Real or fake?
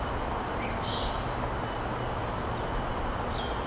real